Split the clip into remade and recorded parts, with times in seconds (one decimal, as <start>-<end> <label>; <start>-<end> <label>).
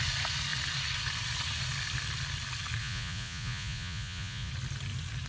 0.0-2.8 recorded; 2.8-4.5 remade; 4.5-5.3 recorded